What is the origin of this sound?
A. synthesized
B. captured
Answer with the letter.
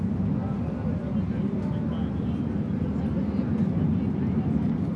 B